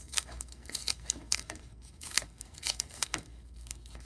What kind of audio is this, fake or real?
fake